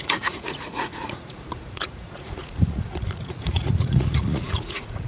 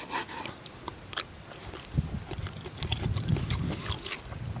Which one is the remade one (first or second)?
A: first